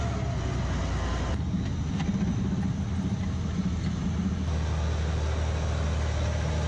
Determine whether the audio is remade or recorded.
recorded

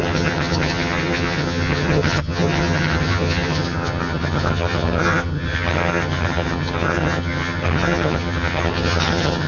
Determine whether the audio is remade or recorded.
remade